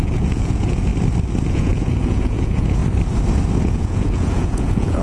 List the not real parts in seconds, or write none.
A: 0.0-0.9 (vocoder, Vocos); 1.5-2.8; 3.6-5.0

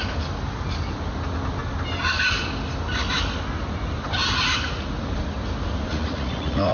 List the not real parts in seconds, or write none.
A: 5.9-6.7 (vocoder, Vocos)

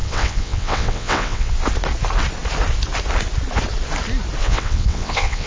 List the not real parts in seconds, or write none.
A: 0.0-1.5 (vocoder, WaveNeXt); 4.4-5.5

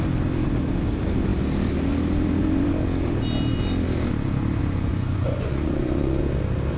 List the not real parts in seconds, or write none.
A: 4.6-6.2 (vocoder, Vocos)